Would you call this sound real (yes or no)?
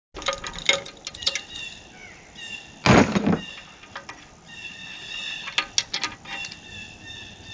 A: yes